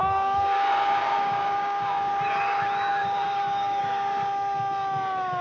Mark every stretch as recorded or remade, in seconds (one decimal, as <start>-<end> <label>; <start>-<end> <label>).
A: 0.0-2.1 remade; 2.1-2.9 recorded; 2.9-3.8 remade; 3.8-5.4 recorded